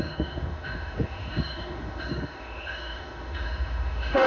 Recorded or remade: remade